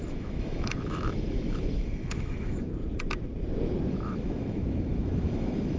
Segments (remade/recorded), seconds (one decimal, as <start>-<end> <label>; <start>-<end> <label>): 0.0-2.7 remade; 2.7-3.9 recorded; 3.9-5.8 remade